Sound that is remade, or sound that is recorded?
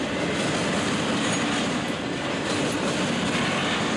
recorded